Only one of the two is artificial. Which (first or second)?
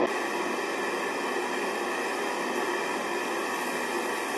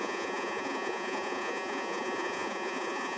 second